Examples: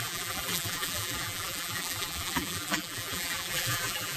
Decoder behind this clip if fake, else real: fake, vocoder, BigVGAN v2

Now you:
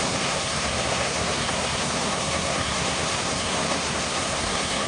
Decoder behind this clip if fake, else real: fake, codec, SNAC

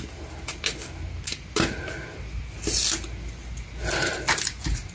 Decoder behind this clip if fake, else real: real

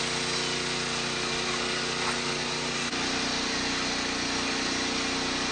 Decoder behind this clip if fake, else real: real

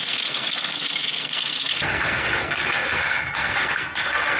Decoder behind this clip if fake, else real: fake, codec, SNAC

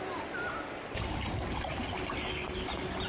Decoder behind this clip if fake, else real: fake, vocoder, BigVGAN v2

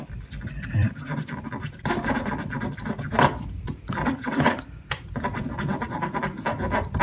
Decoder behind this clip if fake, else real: fake, vocoder, BigVGAN v2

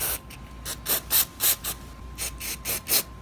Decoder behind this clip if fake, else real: real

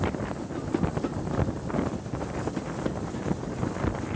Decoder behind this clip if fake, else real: real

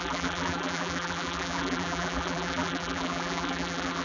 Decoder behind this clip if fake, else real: fake, vocoder, BigVGAN v2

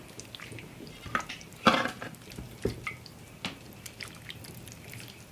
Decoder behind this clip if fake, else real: real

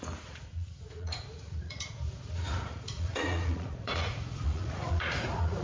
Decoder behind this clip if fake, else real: fake, vocoder, Vocos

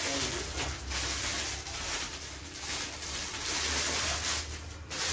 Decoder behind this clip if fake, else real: real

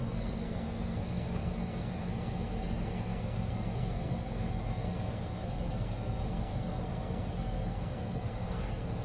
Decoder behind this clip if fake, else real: fake, codec, SNAC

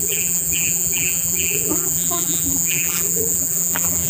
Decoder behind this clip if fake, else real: fake, vocoder, BigVGAN v2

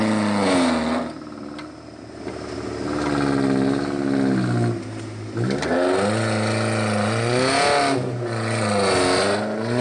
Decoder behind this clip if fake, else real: real